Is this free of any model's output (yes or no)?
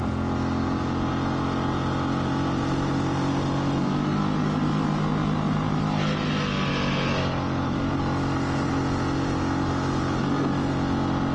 yes